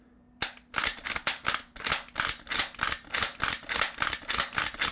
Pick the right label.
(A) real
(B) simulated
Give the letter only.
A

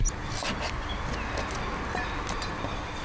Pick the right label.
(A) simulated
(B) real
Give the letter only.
B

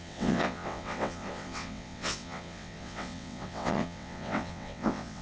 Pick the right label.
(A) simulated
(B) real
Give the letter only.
A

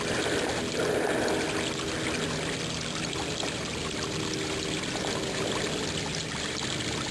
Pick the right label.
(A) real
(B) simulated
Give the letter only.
A